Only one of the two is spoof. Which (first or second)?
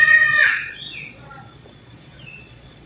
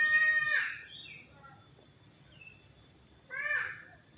first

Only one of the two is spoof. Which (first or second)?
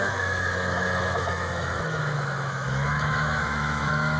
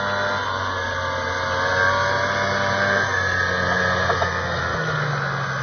first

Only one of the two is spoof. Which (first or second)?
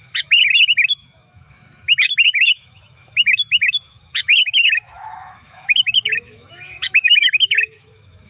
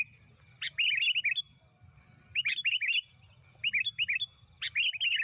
first